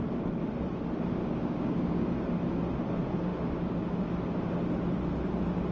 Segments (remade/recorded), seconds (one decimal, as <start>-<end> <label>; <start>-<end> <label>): 0.0-1.2 recorded; 1.2-2.1 remade; 2.1-3.3 recorded; 3.3-4.1 remade; 4.1-5.7 recorded